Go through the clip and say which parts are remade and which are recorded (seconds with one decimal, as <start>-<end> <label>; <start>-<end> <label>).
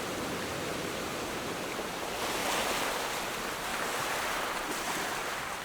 0.0-0.7 recorded; 0.7-1.9 remade; 1.9-2.4 recorded; 2.4-3.2 remade; 3.2-3.7 recorded; 3.7-5.6 remade